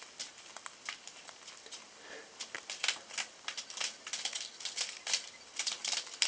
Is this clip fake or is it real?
real